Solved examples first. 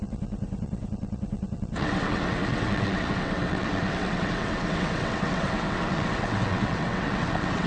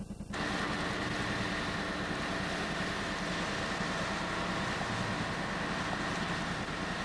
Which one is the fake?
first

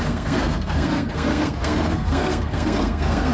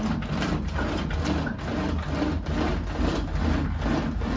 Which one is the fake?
first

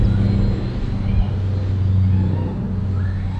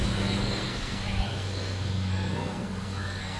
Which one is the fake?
second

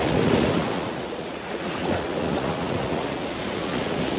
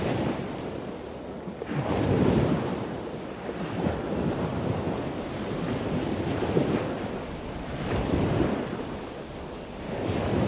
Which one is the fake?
first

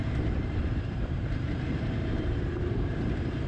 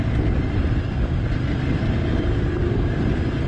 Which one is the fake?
first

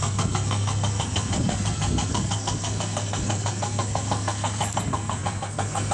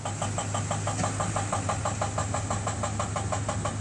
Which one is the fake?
first